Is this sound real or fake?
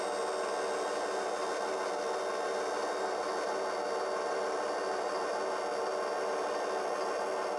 real